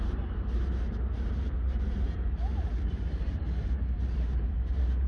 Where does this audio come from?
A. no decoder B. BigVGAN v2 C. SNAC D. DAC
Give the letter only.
B